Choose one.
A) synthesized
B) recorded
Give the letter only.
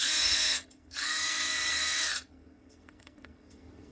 A